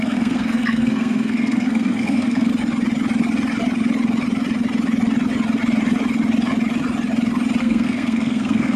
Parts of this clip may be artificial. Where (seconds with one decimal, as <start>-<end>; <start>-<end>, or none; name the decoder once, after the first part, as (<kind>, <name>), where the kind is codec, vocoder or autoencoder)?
0.0-2.5 (codec, SNAC); 7.6-8.8